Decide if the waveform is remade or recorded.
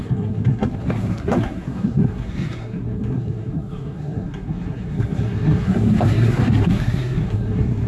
remade